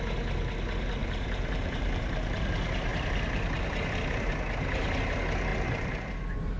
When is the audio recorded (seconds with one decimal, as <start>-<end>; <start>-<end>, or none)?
0.0-1.0; 2.4-2.9; 4.3-5.5; 6.1-6.6